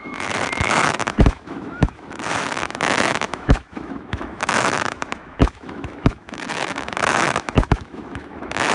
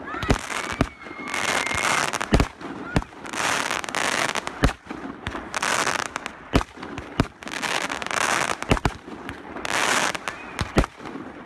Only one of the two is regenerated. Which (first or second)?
first